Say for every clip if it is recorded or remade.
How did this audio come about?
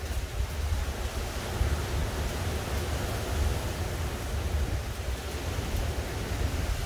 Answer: recorded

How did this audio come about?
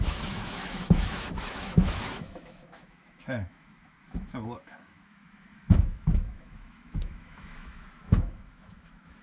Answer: remade